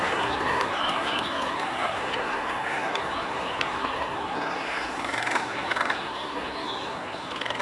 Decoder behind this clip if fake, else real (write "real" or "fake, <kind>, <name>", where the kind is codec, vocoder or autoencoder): fake, codec, SNAC